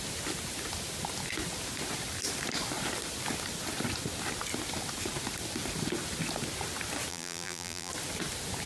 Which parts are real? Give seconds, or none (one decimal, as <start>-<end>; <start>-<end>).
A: 0.0-7.1; 7.9-8.7